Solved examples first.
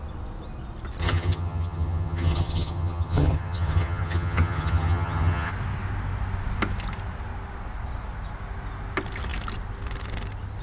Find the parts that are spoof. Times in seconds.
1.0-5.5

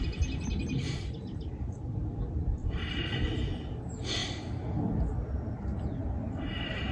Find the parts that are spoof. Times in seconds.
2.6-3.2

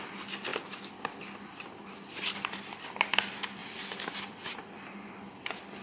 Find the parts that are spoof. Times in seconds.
none

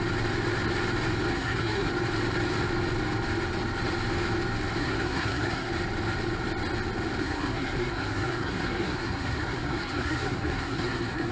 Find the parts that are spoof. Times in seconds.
1.3-1.9; 4.8-5.7; 7.2-11.3

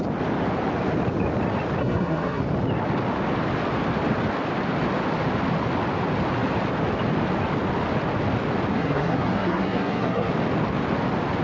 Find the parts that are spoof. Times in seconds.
1.8-2.4; 8.7-10.3

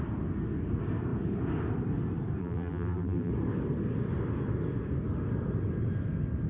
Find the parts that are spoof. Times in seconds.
2.4-3.3

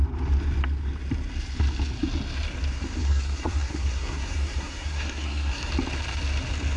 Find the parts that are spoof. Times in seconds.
3.0-5.7